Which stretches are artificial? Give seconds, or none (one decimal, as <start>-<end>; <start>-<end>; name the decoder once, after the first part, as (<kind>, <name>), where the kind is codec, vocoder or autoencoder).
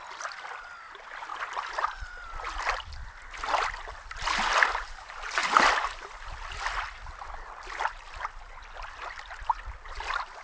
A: none